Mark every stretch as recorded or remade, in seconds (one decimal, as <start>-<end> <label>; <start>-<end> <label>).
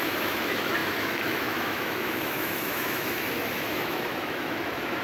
0.0-5.0 remade